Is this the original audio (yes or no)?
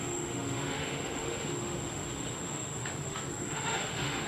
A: no